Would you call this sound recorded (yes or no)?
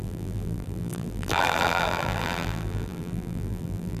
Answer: no